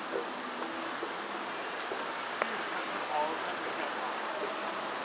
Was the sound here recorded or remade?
recorded